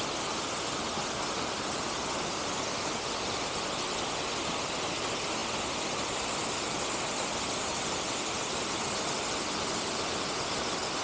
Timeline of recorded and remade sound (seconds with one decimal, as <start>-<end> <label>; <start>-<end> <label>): 0.0-11.0 recorded

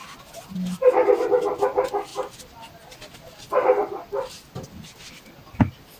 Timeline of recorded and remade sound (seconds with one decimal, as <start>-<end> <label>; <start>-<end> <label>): 0.0-6.0 recorded

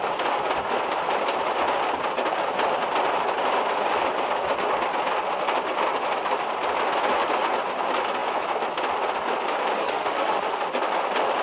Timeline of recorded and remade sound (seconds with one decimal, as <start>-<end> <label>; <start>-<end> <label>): 0.0-9.8 recorded; 9.8-10.6 remade; 10.6-11.4 recorded

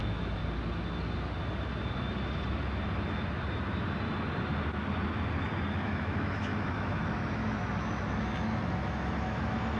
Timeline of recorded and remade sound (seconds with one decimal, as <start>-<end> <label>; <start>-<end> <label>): 0.0-0.4 remade; 0.4-5.7 recorded; 5.7-9.8 remade

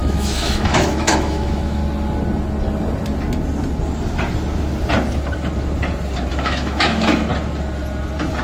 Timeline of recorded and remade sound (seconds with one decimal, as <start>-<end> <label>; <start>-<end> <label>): 0.0-1.8 remade; 1.8-6.3 recorded; 6.3-7.3 remade; 7.3-8.4 recorded